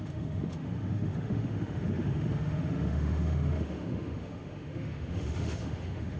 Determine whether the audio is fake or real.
fake